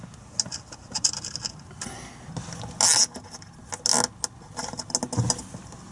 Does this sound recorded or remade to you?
recorded